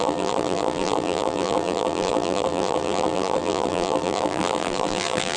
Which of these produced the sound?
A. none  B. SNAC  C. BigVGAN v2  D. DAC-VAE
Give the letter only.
C